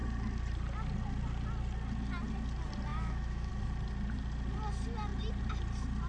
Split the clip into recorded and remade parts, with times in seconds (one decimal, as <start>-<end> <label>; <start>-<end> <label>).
0.0-2.9 recorded; 2.9-3.5 remade; 3.5-6.1 recorded